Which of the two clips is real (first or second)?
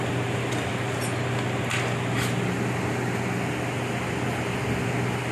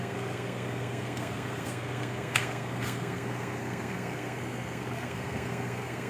first